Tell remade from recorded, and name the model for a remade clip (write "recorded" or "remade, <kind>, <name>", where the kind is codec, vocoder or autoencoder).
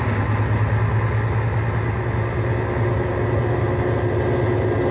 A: recorded